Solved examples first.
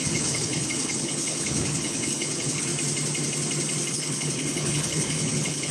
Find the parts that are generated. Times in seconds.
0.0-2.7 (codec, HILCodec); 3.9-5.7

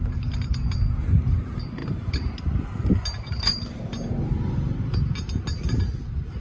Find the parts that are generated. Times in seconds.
none

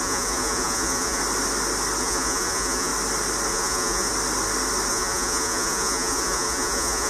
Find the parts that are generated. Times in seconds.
0.0-1.2 (vocoder, Vocos); 2.0-2.9; 3.5-4.1; 4.9-7.1

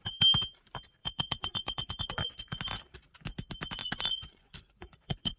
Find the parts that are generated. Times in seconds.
1.0-2.6 (vocoder, Vocos); 3.8-5.4

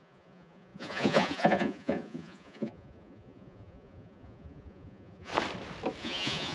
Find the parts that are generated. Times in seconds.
0.0-5.3 (vocoder, Vocos); 6.0-6.5

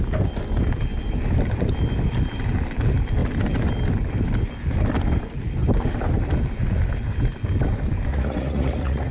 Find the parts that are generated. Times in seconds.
8.1-9.1 (vocoder, Vocos)

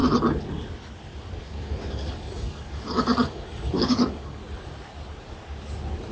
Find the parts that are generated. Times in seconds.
1.4-4.4 (codec, DAC)